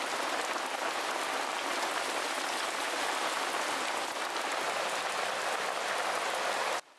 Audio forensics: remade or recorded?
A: recorded